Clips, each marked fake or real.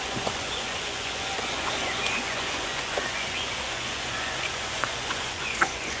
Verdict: fake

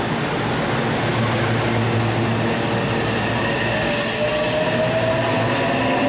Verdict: real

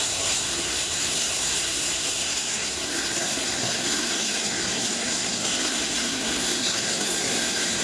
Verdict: fake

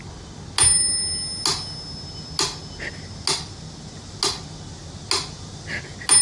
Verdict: real